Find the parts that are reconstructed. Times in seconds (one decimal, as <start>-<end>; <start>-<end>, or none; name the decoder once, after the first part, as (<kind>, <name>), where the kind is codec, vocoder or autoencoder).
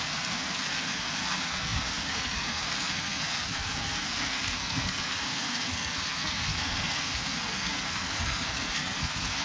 0.0-9.4 (codec, SNAC)